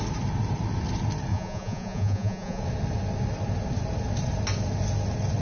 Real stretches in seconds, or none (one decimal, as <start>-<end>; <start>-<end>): 0.0-1.3; 2.6-5.4